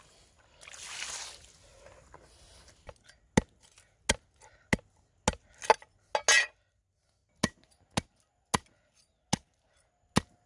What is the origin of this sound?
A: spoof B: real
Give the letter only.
B